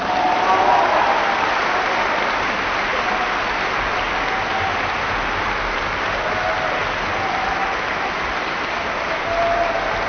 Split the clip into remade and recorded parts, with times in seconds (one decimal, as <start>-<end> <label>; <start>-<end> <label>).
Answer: 0.0-10.1 recorded